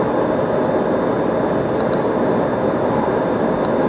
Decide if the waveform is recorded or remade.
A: recorded